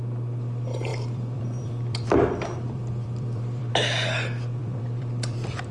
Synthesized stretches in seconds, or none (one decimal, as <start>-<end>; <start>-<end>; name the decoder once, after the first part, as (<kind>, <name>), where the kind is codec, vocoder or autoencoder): 0.9-3.7 (vocoder, BigVGAN v2); 4.6-5.7